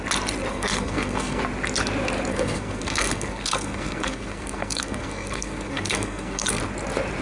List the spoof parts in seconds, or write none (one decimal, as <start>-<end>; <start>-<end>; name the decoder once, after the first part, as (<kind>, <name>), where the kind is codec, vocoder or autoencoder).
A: 0.5-1.4 (codec, SNAC); 2.3-6.6